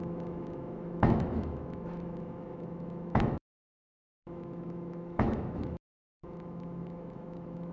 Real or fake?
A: fake